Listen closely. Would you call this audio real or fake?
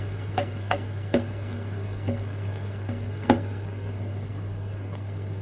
fake